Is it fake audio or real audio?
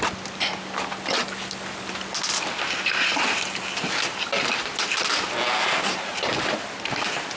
real